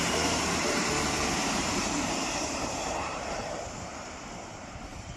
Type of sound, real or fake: fake